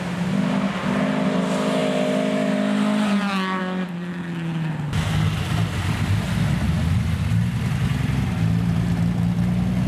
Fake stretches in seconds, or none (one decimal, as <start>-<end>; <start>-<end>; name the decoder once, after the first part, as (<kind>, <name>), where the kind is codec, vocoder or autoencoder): none